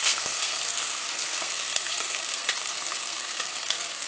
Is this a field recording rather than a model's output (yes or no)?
no